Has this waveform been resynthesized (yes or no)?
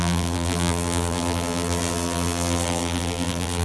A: yes